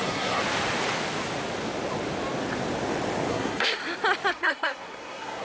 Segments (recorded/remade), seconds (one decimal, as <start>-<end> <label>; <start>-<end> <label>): 0.0-0.4 remade; 0.4-3.3 recorded; 3.3-3.8 remade; 3.8-4.3 recorded; 4.3-5.4 remade